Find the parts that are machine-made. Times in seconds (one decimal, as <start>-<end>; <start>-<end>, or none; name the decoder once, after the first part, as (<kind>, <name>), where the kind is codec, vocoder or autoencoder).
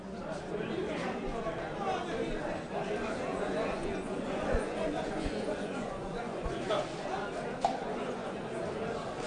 3.3-6.7 (vocoder, Vocos); 7.8-8.4